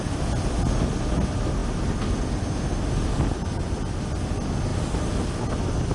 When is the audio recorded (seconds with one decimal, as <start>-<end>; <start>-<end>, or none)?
0.0-5.9